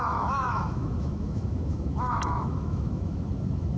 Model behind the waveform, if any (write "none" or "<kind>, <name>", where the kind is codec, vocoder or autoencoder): autoencoder, DAC-VAE